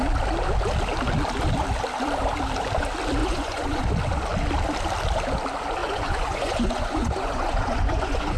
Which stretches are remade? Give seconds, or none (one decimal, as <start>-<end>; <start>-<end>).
3.2-3.8; 5.8-8.4